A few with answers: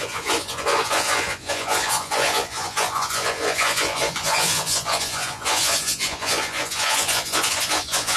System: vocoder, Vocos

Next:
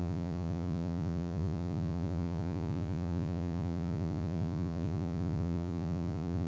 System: vocoder, Vocos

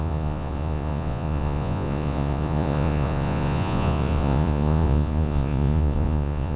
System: vocoder, Vocos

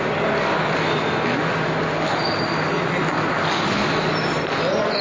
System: none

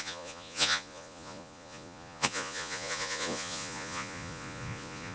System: vocoder, Vocos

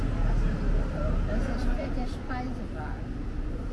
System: none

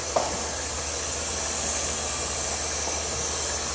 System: none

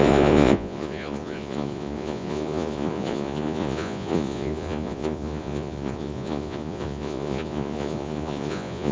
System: vocoder, Vocos